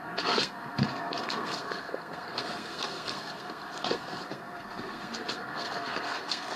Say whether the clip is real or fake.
fake